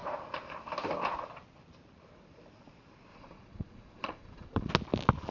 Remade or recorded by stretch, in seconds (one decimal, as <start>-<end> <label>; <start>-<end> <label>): 0.0-3.1 recorded; 3.1-4.7 remade; 4.7-5.3 recorded